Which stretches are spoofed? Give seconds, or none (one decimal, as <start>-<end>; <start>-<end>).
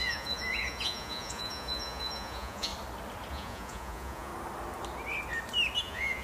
0.0-2.7; 3.3-4.3; 5.8-6.2